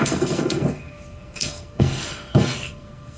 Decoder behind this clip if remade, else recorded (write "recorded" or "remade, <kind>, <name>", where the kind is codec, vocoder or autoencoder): remade, codec, SNAC